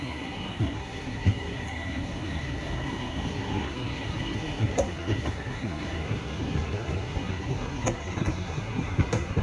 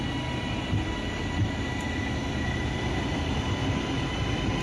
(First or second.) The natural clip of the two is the second